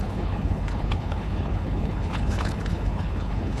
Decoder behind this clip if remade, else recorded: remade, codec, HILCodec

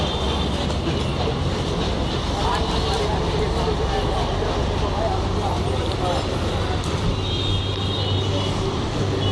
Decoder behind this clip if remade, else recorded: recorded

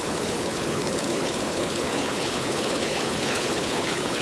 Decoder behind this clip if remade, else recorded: remade, codec, HILCodec